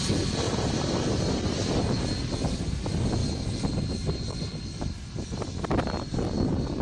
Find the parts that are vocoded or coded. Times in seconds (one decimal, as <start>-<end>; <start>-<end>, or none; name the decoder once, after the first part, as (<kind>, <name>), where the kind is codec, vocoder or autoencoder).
none